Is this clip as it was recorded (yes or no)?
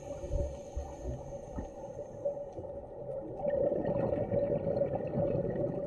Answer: yes